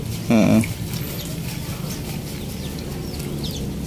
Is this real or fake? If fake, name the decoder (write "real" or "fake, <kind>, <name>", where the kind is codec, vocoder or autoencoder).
real